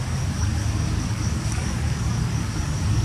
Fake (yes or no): yes